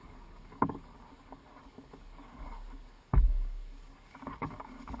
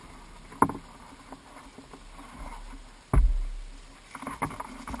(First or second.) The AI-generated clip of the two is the first